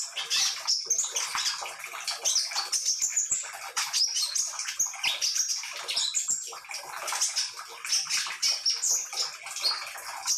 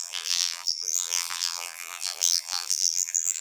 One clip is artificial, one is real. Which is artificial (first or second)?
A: second